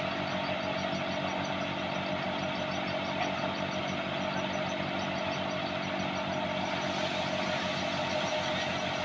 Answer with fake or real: real